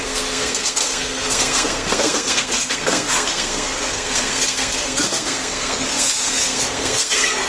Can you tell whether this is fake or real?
fake